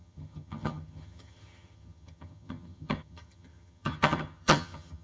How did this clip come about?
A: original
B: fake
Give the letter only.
B